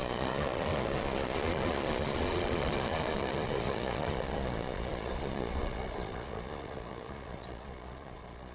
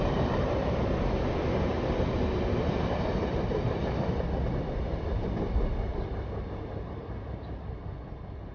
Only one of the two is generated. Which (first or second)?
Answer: first